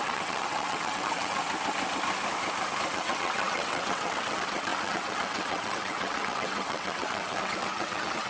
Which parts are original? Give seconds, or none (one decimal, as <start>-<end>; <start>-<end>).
1.4-2.9